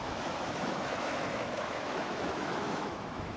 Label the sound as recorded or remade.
remade